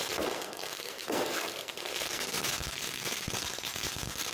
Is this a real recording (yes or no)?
no